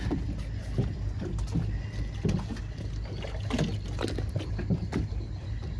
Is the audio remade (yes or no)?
no